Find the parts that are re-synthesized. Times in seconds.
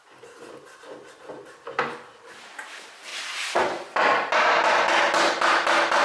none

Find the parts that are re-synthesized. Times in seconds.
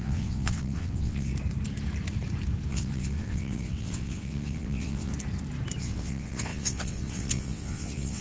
0.0-1.3 (vocoder, WaveNeXt); 2.7-5.1; 5.8-8.2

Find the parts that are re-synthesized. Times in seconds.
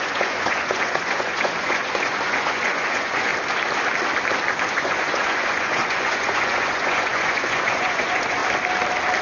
0.0-3.3 (vocoder, Vocos); 4.7-8.4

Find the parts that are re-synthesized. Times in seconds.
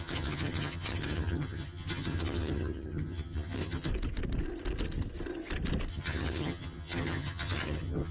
0.0-3.9 (vocoder, HiFi-GAN); 5.9-8.1